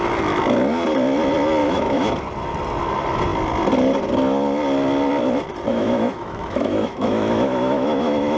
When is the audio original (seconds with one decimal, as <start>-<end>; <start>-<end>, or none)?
0.0-1.6; 2.1-5.7